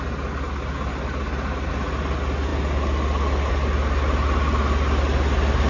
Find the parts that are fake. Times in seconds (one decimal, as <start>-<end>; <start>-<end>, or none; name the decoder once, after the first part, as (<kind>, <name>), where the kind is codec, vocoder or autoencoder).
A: 0.9-1.7 (vocoder, BigVGAN v2)

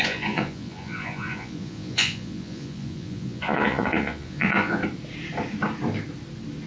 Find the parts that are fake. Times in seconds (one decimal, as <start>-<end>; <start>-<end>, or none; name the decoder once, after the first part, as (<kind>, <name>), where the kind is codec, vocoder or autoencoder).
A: 0.0-4.8 (vocoder, Vocos)

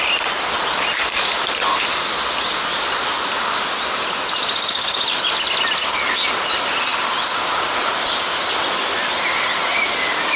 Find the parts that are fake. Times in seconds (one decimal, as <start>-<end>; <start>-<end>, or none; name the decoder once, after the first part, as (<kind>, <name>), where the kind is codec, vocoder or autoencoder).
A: none